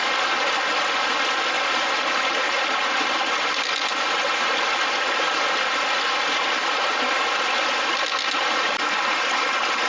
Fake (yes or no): no